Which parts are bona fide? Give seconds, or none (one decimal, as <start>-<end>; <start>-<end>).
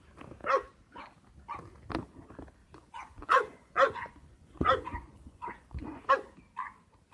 0.0-2.6; 6.1-7.1